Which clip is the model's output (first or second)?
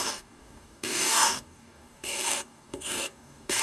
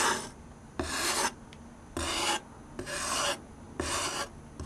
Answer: first